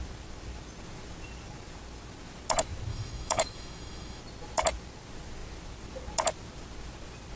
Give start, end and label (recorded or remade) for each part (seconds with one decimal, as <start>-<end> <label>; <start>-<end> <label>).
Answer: 0.0-2.9 recorded; 2.9-4.2 remade; 4.2-7.4 recorded